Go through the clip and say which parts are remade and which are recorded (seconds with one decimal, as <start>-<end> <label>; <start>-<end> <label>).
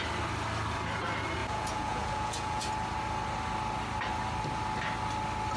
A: 0.0-1.4 recorded; 1.4-2.7 remade; 2.7-5.6 recorded